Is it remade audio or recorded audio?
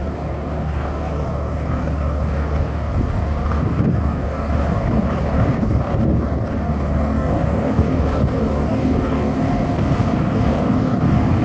remade